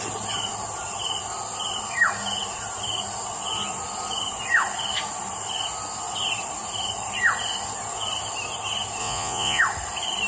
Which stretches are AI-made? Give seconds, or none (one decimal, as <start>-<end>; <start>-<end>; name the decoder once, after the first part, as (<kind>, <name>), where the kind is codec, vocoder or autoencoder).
9.0-9.6 (vocoder, Vocos)